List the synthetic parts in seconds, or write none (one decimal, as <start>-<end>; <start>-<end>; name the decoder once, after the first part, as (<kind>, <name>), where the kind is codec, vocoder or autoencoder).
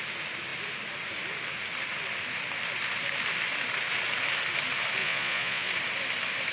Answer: 5.0-5.7 (vocoder, Vocos)